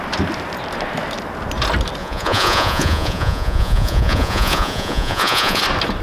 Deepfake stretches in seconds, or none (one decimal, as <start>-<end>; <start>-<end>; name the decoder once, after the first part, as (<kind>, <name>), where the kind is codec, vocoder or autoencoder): 2.0-5.6 (vocoder, Vocos)